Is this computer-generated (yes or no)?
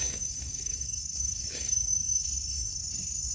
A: yes